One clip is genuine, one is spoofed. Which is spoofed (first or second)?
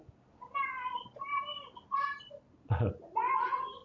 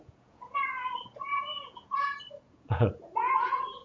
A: second